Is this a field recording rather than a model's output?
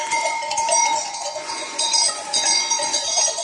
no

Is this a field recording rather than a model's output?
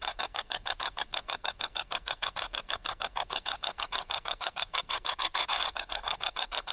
no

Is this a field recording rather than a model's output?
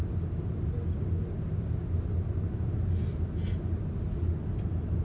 yes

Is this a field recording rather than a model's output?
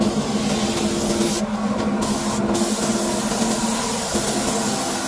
yes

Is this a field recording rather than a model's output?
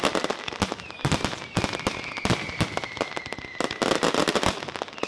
yes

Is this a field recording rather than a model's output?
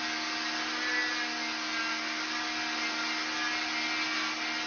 yes